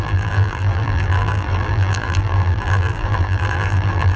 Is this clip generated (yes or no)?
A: yes